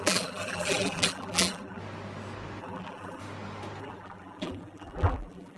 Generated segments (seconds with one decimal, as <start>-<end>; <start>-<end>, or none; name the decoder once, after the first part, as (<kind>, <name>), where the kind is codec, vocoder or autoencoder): 0.0-1.8 (vocoder, BigVGAN v2); 2.6-3.2; 3.8-5.6